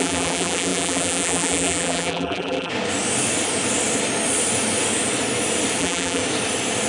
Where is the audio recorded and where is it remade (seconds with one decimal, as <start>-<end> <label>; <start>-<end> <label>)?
0.0-2.7 remade; 2.7-5.8 recorded; 5.8-6.2 remade; 6.2-6.9 recorded